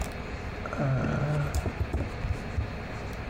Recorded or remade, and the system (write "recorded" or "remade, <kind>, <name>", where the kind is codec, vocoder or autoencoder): recorded